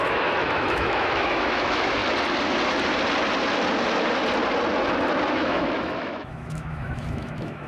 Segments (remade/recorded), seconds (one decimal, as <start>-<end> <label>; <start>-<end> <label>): 0.0-2.0 remade; 2.0-5.3 recorded; 5.3-7.7 remade